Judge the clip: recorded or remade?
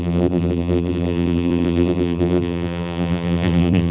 remade